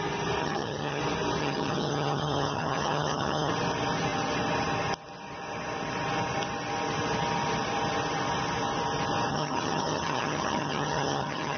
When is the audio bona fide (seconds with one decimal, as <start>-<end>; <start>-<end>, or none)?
0.0-0.4; 1.0-1.4; 3.5-9.3